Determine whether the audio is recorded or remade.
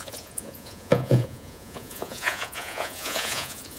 remade